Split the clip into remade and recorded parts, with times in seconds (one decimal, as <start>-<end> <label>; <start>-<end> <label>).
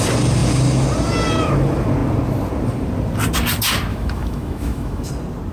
0.0-3.9 recorded; 3.9-5.1 remade; 5.1-5.5 recorded